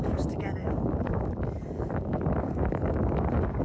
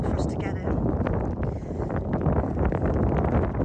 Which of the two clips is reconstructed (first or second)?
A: first